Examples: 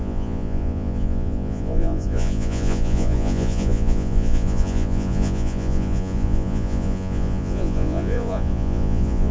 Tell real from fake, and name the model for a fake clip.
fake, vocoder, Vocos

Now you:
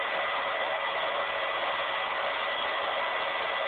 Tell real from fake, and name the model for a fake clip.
real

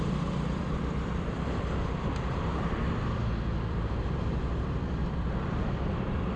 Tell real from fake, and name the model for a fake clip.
fake, vocoder, BigVGAN v2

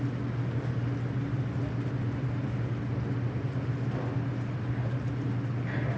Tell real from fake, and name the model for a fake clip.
real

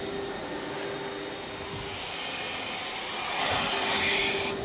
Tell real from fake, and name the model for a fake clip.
real